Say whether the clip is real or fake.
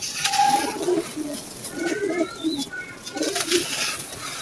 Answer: fake